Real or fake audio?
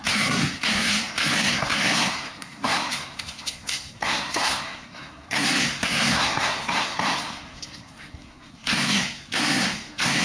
fake